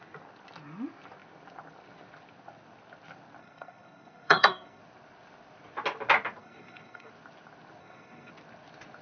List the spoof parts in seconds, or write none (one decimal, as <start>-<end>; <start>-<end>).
3.4-4.8; 6.4-7.1; 7.8-8.3